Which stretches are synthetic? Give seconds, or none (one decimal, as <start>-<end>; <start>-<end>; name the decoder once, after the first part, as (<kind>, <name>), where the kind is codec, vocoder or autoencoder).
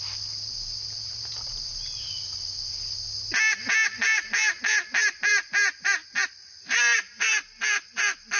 none